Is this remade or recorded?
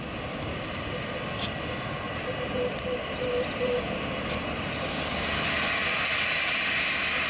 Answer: recorded